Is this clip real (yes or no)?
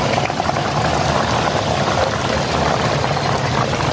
yes